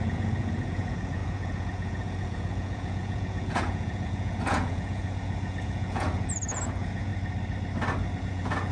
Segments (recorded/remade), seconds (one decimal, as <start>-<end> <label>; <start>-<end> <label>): 0.0-7.1 remade; 7.1-8.2 recorded; 8.2-8.7 remade